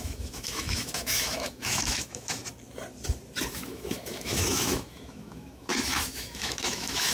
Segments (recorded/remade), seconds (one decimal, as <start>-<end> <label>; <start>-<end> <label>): 0.0-2.4 remade; 2.4-3.5 recorded; 3.5-7.1 remade